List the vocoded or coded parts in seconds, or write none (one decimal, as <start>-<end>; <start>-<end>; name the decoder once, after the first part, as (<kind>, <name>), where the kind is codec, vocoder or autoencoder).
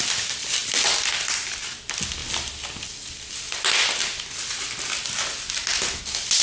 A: none